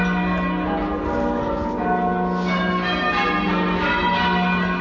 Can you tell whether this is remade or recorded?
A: recorded